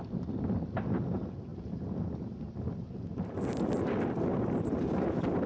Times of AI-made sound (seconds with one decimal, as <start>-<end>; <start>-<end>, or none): none